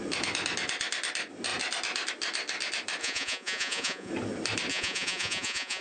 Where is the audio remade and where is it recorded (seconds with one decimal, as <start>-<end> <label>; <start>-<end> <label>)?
0.0-3.0 recorded; 3.0-4.1 remade; 4.1-4.7 recorded; 4.7-5.8 remade